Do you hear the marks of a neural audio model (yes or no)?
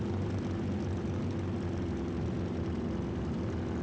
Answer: no